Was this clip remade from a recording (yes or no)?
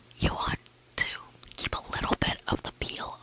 yes